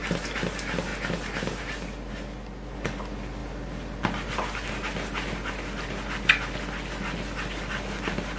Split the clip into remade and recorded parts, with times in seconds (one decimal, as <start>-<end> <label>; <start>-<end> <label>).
0.0-8.4 recorded